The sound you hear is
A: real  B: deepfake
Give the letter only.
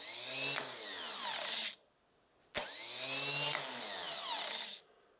A